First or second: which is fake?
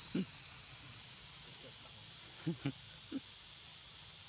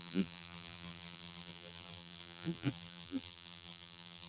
second